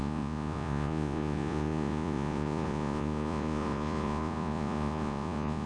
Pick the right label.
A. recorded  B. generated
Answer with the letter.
B